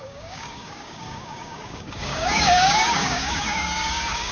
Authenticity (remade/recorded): remade